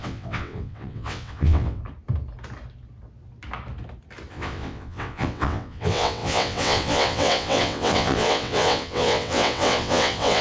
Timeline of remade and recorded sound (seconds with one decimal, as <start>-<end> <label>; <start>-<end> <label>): 0.0-1.8 remade; 1.8-4.3 recorded; 4.3-10.4 remade

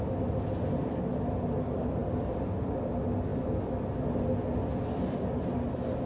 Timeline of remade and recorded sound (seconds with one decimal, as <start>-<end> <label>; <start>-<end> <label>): 0.0-6.1 recorded